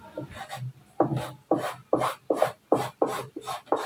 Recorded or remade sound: recorded